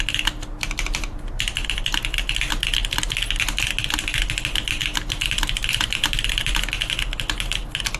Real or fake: real